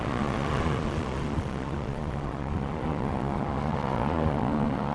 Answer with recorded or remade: remade